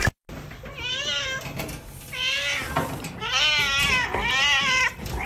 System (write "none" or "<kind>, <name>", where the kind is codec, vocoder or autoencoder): none